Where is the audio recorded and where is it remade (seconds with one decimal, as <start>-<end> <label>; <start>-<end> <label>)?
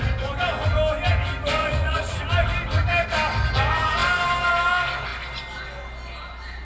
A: 0.0-1.6 recorded; 1.6-2.2 remade; 2.2-6.6 recorded